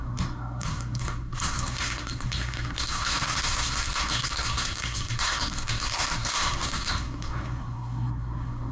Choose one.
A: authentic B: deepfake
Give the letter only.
B